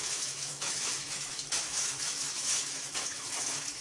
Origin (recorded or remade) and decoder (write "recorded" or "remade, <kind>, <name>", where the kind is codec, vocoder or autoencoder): remade, autoencoder, DAC-VAE